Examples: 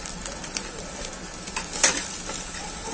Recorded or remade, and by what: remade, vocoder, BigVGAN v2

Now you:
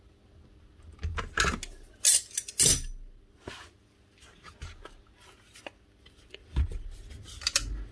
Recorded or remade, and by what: recorded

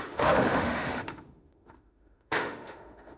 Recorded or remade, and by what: remade, autoencoder, DAC-VAE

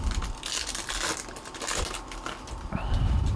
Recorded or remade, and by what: recorded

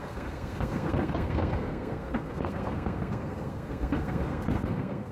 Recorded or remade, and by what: remade, codec, SNAC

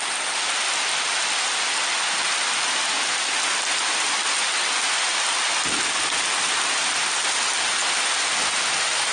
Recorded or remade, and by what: recorded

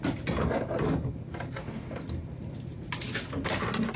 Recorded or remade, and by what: recorded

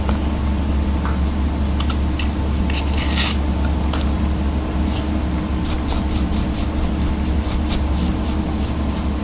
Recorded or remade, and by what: recorded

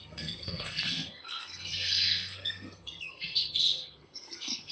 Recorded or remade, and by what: remade, codec, SNAC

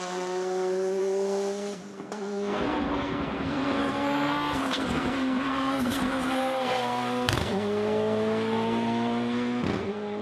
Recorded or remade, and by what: remade, codec, SNAC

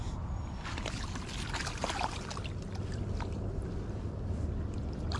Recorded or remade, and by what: recorded